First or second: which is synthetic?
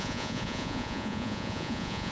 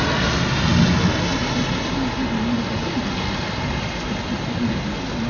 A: first